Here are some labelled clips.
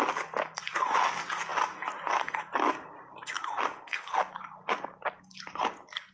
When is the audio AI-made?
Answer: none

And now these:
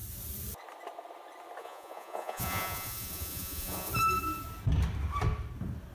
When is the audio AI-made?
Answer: 1.6-3.9 (vocoder, Vocos)

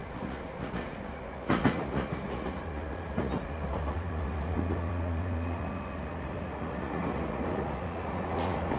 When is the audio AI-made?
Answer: 0.0-8.8 (vocoder, Vocos)

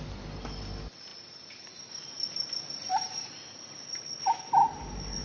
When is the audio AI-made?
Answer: none

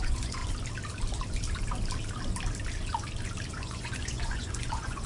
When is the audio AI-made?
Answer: 0.0-0.4 (vocoder, Vocos); 3.5-5.1

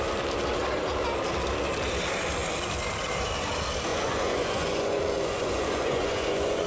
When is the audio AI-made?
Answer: 3.9-6.7 (vocoder, Vocos)